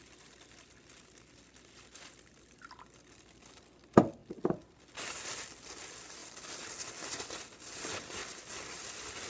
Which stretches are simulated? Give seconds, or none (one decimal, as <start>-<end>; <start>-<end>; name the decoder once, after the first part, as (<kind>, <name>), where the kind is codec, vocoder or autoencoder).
none